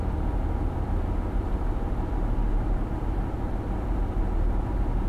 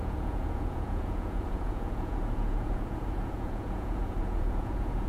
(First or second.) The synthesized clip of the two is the second